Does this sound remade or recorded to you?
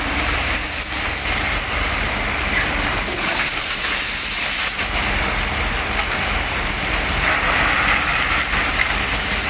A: remade